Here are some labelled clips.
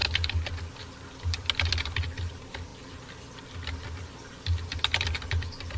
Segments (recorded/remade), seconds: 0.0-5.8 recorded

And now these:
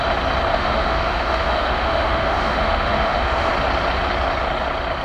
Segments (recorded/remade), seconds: 0.0-0.5 recorded; 0.5-3.5 remade; 3.5-5.0 recorded